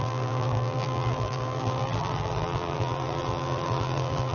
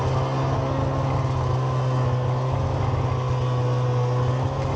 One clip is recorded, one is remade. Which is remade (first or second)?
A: first